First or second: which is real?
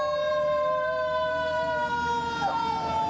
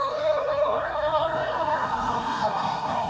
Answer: first